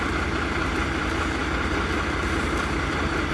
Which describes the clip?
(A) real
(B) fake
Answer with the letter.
A